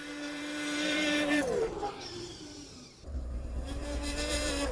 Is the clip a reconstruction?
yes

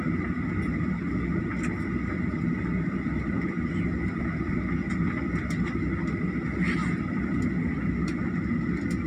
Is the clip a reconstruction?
no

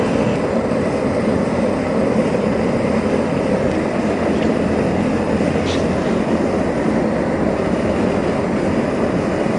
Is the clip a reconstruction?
no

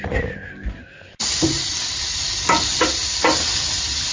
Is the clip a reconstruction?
no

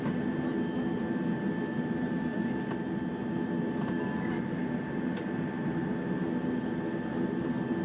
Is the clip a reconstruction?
no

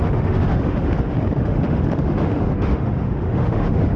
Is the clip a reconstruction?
yes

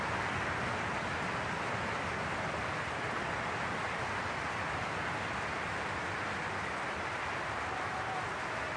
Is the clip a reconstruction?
no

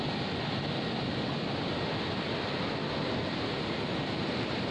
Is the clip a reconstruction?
no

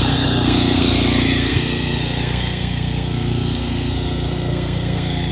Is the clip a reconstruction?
yes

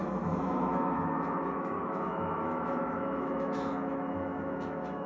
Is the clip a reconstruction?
yes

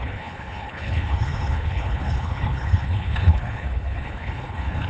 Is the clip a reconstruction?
yes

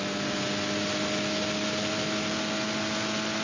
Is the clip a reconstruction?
no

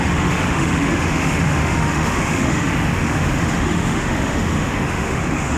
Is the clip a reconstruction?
yes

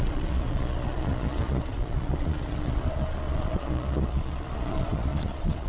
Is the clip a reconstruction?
yes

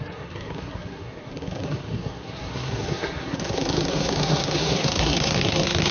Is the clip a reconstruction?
yes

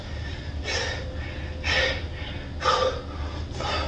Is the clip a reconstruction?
no